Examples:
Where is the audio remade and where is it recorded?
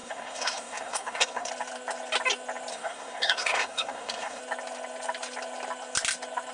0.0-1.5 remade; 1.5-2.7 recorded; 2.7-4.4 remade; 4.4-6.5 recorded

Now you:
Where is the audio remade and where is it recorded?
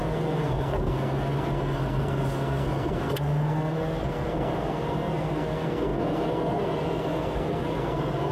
0.0-8.3 remade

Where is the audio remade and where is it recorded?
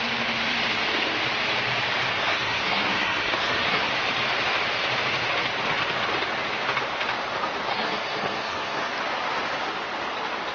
0.0-2.1 recorded; 2.1-3.9 remade; 3.9-7.7 recorded; 7.7-8.9 remade; 8.9-10.5 recorded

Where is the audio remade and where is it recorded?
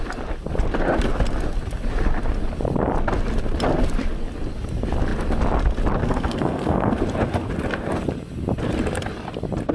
0.0-6.0 recorded; 6.0-7.0 remade; 7.0-9.7 recorded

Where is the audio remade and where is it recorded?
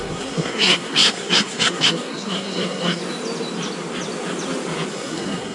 0.0-3.0 remade; 3.0-4.9 recorded; 4.9-5.5 remade